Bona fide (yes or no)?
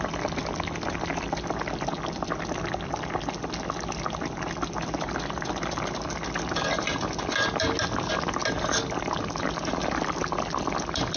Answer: yes